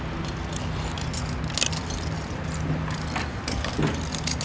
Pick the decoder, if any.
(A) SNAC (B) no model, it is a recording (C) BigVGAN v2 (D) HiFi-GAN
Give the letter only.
B